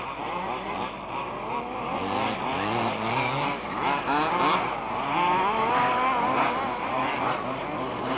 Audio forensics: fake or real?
real